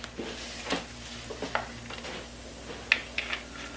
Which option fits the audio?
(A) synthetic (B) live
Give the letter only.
B